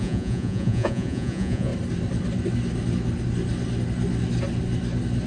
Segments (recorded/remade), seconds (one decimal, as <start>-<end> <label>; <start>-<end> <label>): 0.0-1.7 remade; 1.7-5.3 recorded